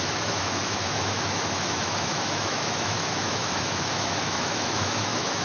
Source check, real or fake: fake